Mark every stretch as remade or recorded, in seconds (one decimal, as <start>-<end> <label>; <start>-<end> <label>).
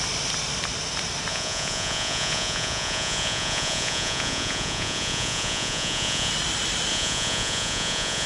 0.0-1.3 recorded; 1.3-6.3 remade; 6.3-6.9 recorded; 6.9-8.3 remade